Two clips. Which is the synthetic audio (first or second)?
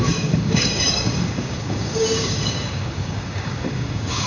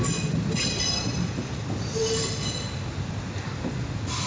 first